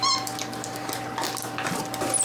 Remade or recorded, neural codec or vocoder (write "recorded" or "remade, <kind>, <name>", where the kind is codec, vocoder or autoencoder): recorded